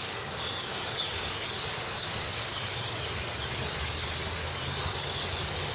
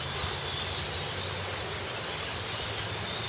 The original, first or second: second